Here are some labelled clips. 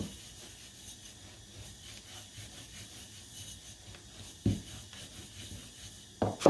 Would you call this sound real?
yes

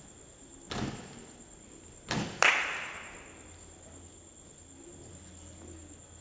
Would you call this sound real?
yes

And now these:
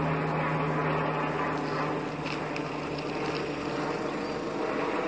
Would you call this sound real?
yes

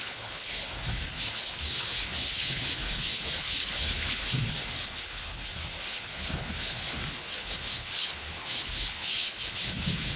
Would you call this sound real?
no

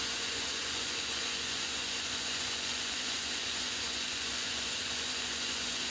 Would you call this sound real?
no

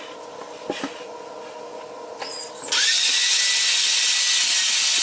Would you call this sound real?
yes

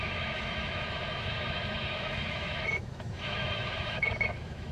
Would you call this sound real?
no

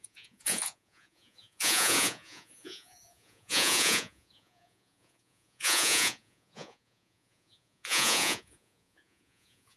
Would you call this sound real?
no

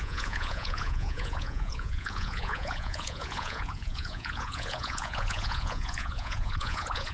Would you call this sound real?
no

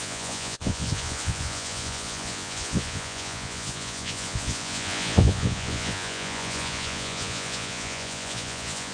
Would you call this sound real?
no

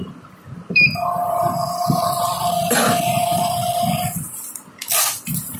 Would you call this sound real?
no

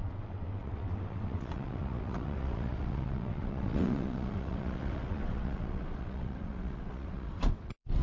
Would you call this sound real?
no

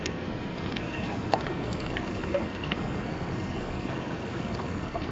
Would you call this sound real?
no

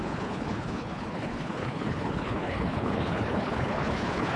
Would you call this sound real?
no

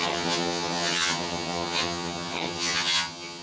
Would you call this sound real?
no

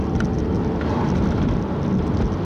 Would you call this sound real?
yes